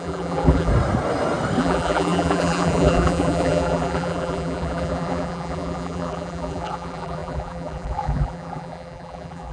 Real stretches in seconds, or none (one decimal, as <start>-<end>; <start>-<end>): 0.7-1.6